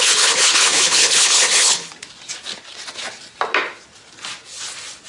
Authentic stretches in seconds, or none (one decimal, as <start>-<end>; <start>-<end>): 1.9-5.1